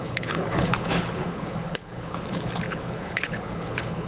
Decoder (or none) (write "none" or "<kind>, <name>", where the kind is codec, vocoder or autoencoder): codec, HILCodec